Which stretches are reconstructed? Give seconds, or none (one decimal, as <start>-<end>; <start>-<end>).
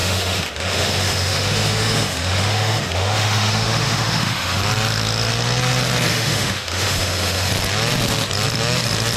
0.0-4.6; 6.1-7.5